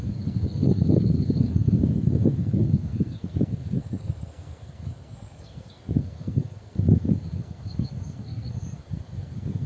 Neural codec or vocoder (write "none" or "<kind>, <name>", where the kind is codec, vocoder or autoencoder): codec, SNAC